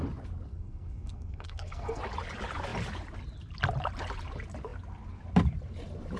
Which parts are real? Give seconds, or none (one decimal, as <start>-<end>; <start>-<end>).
0.0-0.5; 2.0-6.2